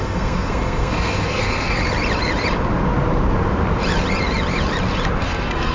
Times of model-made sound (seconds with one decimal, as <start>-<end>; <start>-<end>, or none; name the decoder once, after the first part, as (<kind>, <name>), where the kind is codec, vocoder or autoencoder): 0.0-1.8 (codec, SNAC); 5.2-5.7